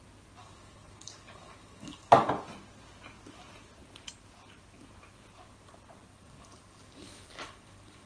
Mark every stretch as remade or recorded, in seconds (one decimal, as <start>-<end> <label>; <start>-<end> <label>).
0.0-0.4 recorded; 0.4-2.3 remade; 2.3-6.1 recorded; 6.1-8.1 remade